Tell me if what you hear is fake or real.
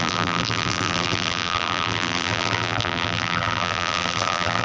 fake